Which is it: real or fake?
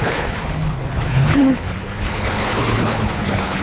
fake